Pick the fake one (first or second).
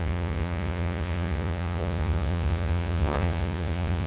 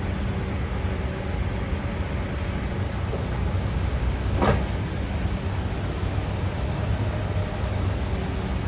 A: first